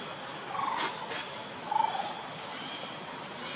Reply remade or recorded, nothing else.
recorded